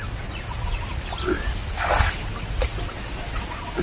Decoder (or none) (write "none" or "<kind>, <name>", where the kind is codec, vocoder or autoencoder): none